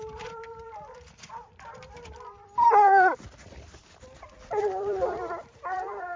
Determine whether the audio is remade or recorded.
remade